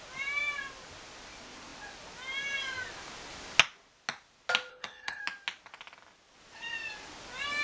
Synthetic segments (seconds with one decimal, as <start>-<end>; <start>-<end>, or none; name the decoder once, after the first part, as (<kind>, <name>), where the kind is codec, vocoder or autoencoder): 4.7-5.2 (codec, HILCodec)